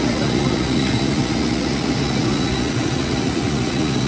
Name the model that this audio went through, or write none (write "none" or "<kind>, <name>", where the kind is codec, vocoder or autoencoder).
vocoder, Vocos